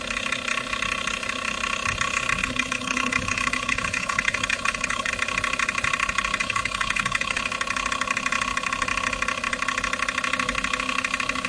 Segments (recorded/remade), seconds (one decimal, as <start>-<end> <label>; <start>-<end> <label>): 0.0-2.4 recorded; 2.4-5.1 remade; 5.1-6.4 recorded; 6.4-7.4 remade; 7.4-11.5 recorded